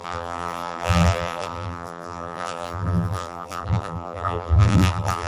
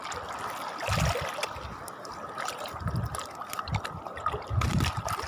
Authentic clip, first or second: second